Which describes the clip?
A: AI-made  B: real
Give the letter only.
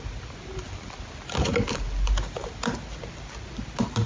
B